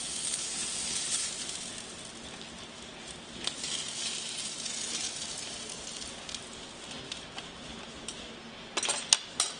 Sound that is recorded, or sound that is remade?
recorded